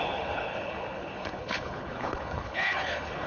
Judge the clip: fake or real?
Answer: fake